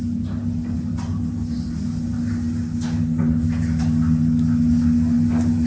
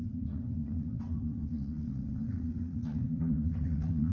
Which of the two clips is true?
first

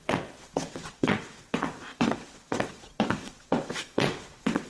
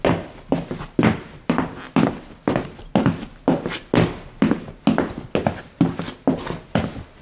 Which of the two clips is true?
second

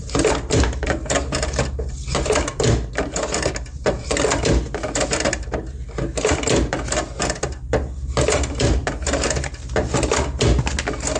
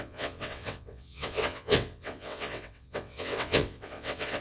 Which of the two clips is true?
first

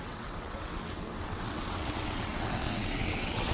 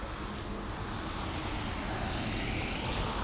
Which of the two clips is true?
second